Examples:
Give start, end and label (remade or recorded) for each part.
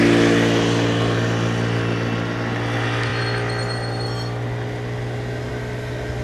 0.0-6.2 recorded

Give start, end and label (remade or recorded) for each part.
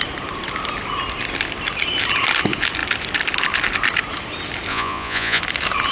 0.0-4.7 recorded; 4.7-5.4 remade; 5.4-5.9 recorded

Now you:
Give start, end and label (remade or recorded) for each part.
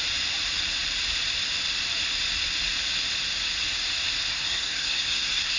0.0-4.3 recorded; 4.3-5.6 remade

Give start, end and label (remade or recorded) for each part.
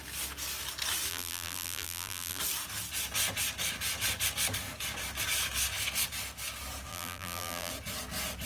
0.0-1.1 recorded; 1.1-2.4 remade; 2.4-6.9 recorded; 6.9-7.7 remade; 7.7-8.5 recorded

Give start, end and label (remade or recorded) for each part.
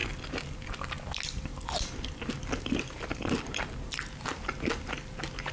0.0-5.5 recorded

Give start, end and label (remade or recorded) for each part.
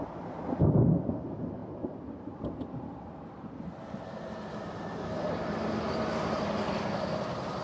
0.0-7.6 recorded